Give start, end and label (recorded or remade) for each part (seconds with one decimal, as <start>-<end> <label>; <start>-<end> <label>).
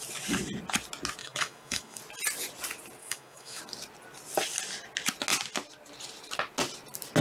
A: 0.0-1.2 recorded; 1.2-2.0 remade; 2.0-3.0 recorded; 3.0-3.6 remade; 3.6-7.2 recorded